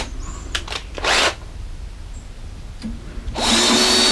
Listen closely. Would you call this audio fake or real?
real